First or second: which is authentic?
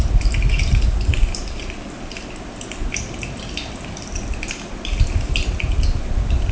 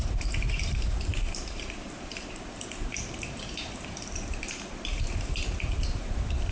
first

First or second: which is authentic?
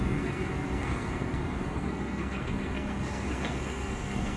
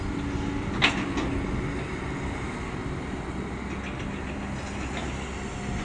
second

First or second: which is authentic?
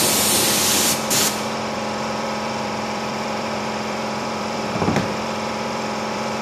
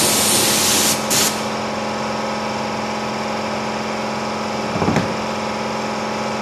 second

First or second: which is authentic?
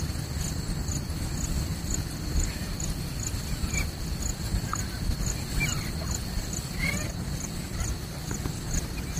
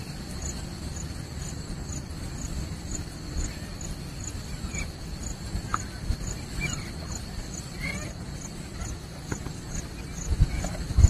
first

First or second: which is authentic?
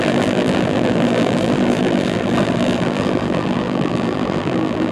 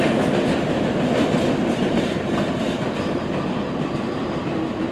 second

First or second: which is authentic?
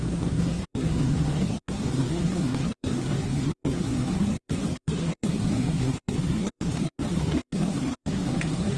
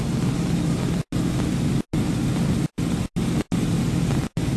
second